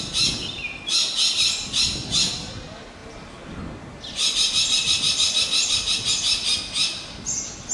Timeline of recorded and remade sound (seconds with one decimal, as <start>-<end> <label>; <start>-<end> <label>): 0.0-7.7 recorded